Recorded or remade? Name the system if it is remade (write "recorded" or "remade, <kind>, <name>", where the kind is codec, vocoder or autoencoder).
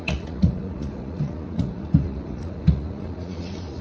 remade, vocoder, Vocos